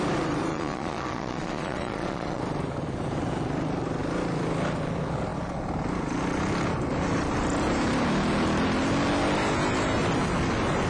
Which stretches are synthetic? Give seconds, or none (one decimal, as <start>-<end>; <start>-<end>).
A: 0.5-2.4